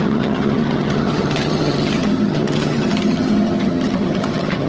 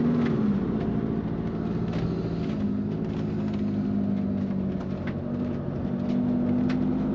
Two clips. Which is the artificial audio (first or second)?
first